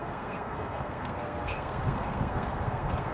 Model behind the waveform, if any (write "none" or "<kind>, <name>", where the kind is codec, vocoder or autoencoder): codec, SNAC